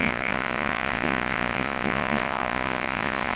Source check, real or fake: fake